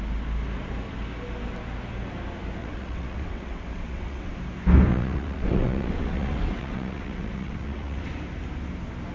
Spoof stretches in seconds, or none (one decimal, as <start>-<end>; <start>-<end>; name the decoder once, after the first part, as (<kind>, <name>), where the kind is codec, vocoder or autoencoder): 2.6-4.3 (vocoder, WaveNeXt); 4.9-8.0